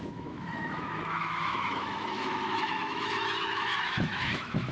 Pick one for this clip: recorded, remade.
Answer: remade